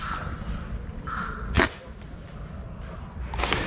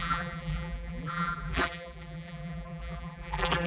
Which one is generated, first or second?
second